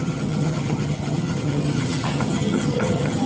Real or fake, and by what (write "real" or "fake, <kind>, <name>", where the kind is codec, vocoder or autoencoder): fake, vocoder, HiFi-GAN